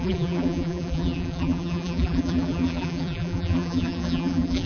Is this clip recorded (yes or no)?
no